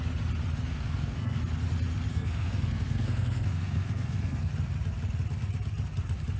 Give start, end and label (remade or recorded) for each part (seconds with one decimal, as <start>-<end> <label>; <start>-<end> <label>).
0.0-0.7 recorded; 0.7-1.4 remade; 1.4-2.1 recorded; 2.1-4.5 remade; 4.5-6.4 recorded